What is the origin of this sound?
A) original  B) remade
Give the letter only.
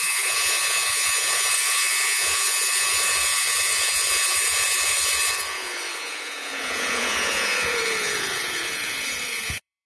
B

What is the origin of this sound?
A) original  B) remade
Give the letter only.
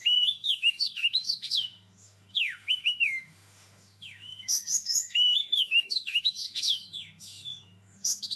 B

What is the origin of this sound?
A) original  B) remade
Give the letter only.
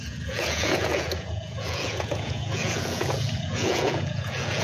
B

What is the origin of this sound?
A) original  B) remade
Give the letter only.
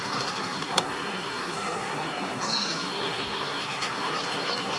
B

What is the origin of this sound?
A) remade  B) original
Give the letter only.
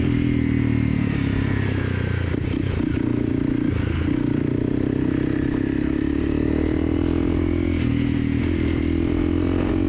B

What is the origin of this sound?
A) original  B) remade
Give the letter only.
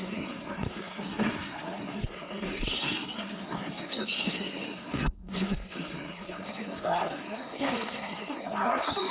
B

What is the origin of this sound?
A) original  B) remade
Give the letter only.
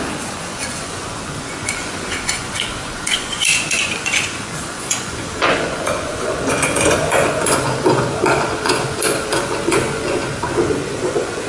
B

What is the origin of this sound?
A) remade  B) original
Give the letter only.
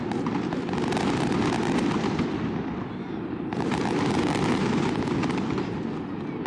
B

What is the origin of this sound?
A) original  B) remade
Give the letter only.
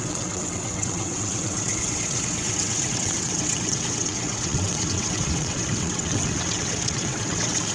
B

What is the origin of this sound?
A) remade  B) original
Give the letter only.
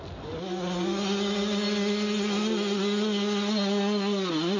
B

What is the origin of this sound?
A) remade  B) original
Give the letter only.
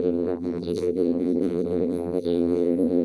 A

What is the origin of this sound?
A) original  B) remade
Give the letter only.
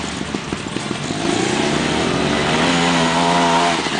A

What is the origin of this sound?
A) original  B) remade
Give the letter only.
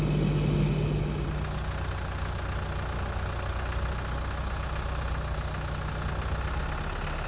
A